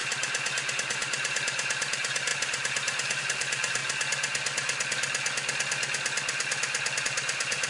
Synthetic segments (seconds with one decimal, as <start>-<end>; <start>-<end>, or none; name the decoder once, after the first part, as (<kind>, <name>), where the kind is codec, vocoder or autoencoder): 0.0-3.8 (vocoder, BigVGAN v2); 7.0-7.7